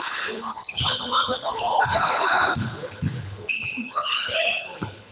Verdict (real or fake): fake